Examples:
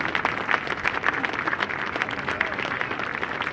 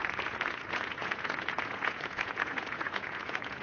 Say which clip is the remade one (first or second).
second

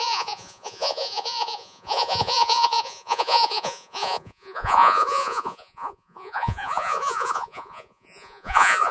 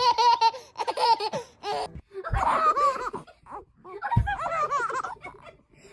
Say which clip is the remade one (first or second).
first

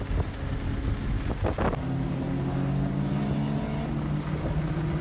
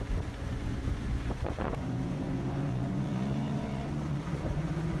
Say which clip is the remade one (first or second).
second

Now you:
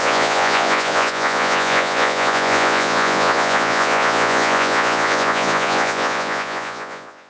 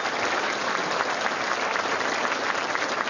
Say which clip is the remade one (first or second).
first